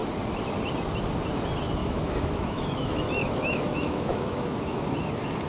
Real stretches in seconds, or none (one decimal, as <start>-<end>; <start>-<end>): 0.0-1.8; 4.8-5.5